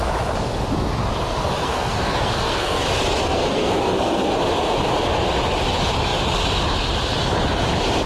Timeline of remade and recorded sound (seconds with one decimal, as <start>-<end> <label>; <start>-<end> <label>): 0.0-1.3 recorded; 1.3-2.8 remade; 2.8-3.2 recorded; 3.2-4.3 remade; 4.3-8.1 recorded